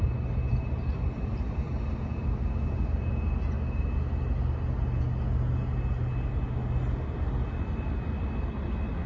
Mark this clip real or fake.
real